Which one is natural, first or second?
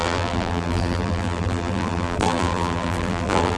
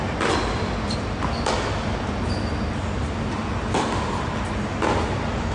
second